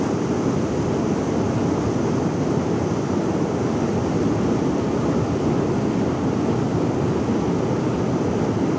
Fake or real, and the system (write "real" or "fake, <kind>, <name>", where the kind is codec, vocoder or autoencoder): real